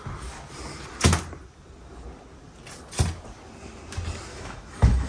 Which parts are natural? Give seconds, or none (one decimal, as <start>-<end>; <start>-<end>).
0.0-4.3